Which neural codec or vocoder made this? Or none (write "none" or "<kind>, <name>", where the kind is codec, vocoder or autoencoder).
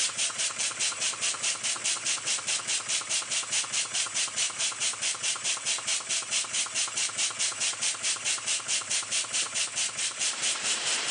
vocoder, BigVGAN v2